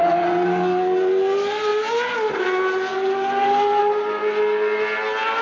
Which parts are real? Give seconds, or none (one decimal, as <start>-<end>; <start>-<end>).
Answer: 0.0-5.4